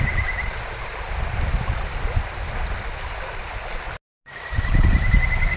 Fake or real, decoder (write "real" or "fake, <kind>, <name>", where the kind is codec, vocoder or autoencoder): real